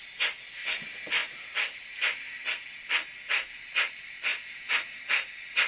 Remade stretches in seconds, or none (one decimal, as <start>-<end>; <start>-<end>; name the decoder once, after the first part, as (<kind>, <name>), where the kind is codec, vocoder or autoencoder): 1.2-2.3 (vocoder, BigVGAN v2); 4.3-4.9